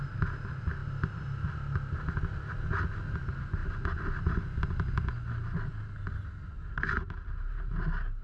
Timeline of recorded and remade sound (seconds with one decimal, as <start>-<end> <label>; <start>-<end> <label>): 0.0-8.2 recorded

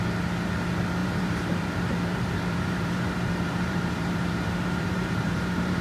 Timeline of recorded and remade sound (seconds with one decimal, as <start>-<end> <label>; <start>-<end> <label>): 0.0-1.0 recorded; 1.0-1.7 remade; 1.7-2.1 recorded; 2.1-5.8 remade

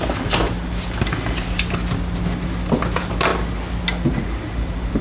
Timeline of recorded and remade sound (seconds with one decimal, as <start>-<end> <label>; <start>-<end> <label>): 0.0-5.0 recorded

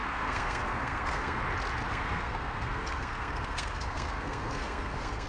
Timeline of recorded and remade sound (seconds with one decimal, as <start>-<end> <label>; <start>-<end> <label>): 0.0-1.4 remade; 1.4-1.9 recorded; 1.9-5.3 remade

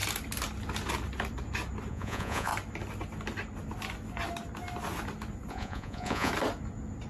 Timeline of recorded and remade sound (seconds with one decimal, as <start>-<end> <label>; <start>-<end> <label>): 0.0-1.9 recorded; 1.9-2.5 remade; 2.5-5.5 recorded; 5.5-6.3 remade; 6.3-7.1 recorded

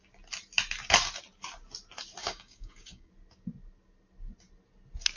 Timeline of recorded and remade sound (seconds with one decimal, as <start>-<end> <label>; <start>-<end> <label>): 0.0-2.2 recorded; 2.2-3.1 remade; 3.1-5.2 recorded

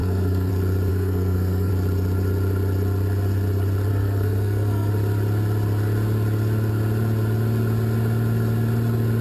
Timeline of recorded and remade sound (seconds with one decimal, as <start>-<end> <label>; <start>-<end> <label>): 0.0-0.5 remade; 0.5-0.9 recorded; 0.9-1.7 remade; 1.7-3.9 recorded; 3.9-4.9 remade; 4.9-9.2 recorded

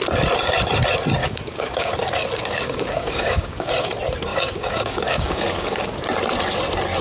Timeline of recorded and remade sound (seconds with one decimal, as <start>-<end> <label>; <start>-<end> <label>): 0.0-1.2 recorded; 1.2-1.9 remade; 1.9-2.4 recorded; 2.4-3.9 remade; 3.9-4.3 recorded; 4.3-6.0 remade; 6.0-7.0 recorded